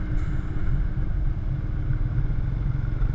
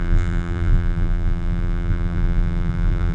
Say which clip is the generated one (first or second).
second